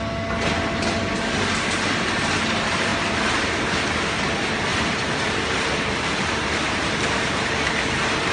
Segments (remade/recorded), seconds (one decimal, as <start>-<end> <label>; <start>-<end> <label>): 0.0-2.9 recorded; 2.9-3.5 remade; 3.5-4.7 recorded; 4.7-7.7 remade; 7.7-8.3 recorded